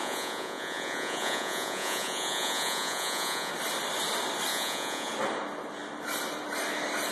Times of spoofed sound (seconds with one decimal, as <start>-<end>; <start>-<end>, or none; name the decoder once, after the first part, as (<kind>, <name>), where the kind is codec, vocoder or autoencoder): 0.0-3.5 (vocoder, Vocos); 4.5-5.1